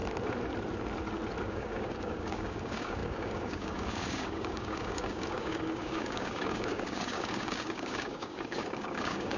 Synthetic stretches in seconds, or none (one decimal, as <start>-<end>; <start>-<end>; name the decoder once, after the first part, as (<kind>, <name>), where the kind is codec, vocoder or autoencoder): 1.4-9.4 (codec, DAC)